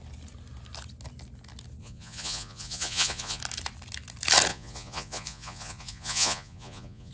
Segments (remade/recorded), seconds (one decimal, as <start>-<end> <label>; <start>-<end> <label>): 0.0-1.8 recorded; 1.8-3.4 remade; 3.4-4.5 recorded; 4.5-7.1 remade